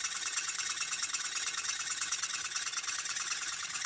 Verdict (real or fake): fake